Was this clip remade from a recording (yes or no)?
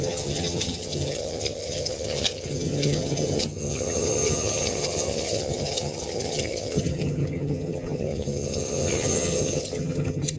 yes